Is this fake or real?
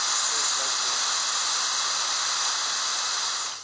real